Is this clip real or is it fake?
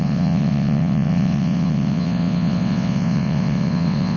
fake